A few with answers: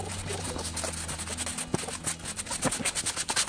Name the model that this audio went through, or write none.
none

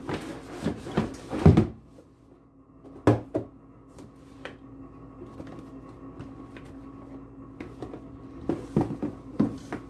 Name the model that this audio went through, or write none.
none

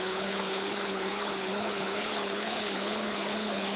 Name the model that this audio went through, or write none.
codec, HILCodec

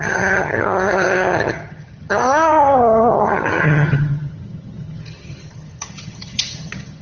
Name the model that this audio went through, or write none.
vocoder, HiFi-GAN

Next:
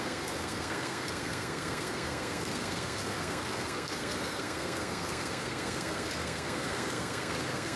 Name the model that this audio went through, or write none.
codec, SNAC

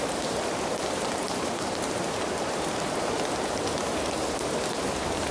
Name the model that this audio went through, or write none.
vocoder, BigVGAN v2